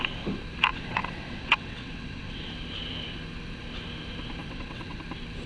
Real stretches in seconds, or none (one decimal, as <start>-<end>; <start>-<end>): 0.0-0.7; 2.5-4.4; 5.0-5.5